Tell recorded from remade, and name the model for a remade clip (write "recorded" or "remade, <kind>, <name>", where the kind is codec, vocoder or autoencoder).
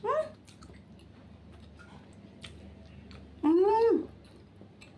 recorded